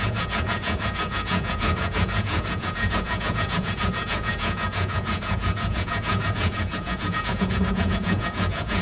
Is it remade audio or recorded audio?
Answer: remade